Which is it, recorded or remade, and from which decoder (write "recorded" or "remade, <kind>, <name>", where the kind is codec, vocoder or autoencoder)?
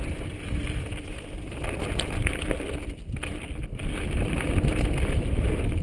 recorded